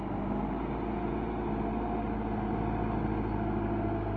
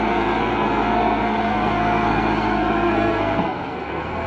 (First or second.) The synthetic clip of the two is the second